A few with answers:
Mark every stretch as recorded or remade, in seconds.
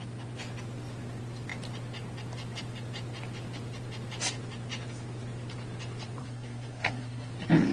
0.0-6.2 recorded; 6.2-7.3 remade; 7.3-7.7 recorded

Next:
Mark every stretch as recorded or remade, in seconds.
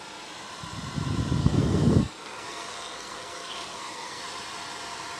0.0-1.4 recorded; 1.4-4.2 remade; 4.2-5.2 recorded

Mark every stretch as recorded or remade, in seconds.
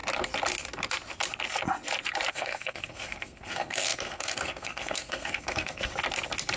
0.0-2.3 recorded; 2.3-5.9 remade; 5.9-6.6 recorded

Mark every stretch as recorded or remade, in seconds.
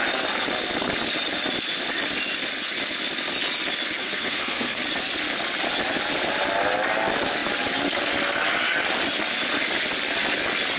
0.0-4.0 recorded; 4.0-4.8 remade; 4.8-10.8 recorded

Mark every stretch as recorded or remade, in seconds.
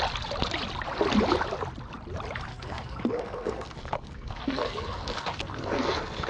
0.0-2.5 recorded; 2.5-6.3 remade